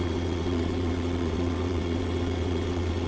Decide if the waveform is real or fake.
fake